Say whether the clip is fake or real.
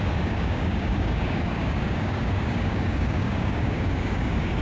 fake